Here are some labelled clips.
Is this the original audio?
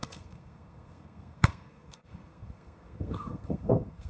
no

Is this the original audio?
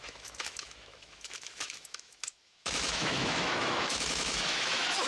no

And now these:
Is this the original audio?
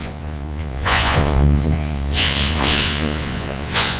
no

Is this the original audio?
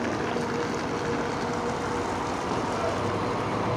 yes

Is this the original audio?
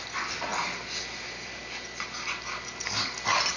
yes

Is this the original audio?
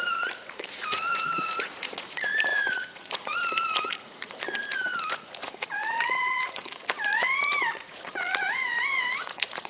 no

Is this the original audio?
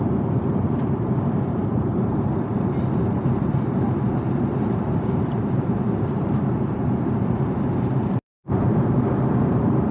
no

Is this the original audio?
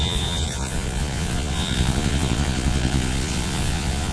no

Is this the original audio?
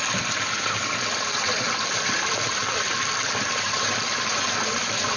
no